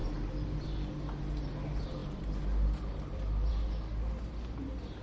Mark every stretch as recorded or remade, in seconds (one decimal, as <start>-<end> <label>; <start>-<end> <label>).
0.0-2.0 recorded; 2.0-3.5 remade; 3.5-5.0 recorded